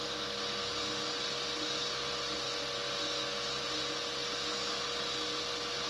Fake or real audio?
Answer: real